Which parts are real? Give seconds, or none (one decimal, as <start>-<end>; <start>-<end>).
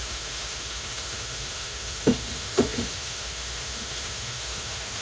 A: none